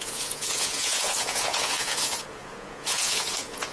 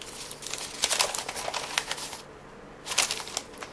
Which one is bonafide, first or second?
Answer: second